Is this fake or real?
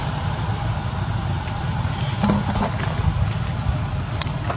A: real